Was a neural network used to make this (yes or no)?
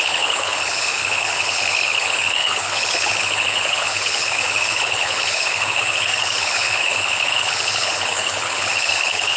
yes